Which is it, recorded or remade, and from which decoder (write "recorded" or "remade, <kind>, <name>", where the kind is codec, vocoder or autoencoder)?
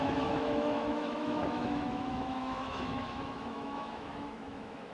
remade, autoencoder, DAC-VAE